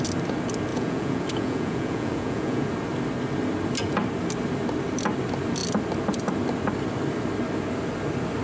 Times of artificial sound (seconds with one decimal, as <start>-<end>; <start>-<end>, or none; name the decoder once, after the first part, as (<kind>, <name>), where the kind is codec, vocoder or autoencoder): 0.7-2.7 (vocoder, Vocos)